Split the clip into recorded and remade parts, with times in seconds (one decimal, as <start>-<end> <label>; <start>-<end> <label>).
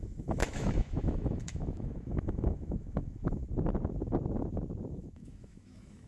0.0-3.4 remade; 3.4-4.9 recorded; 4.9-6.1 remade